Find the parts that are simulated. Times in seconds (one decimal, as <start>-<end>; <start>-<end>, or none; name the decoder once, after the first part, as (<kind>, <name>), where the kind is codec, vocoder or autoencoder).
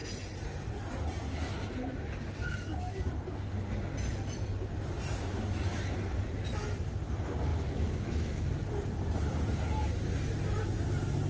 2.4-3.1 (autoencoder, DAC-VAE); 5.1-5.8; 7.5-8.5